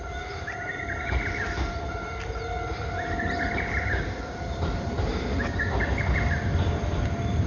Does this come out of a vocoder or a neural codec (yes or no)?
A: yes